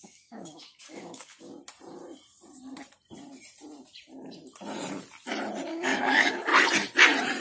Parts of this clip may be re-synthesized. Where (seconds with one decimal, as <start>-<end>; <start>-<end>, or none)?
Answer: 0.0-1.5; 5.7-6.5